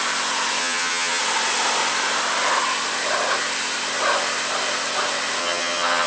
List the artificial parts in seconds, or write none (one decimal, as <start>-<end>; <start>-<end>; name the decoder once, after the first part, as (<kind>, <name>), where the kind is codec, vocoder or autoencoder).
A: 0.6-1.2 (vocoder, HiFi-GAN); 5.4-6.1